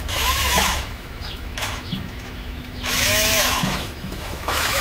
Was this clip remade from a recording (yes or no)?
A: yes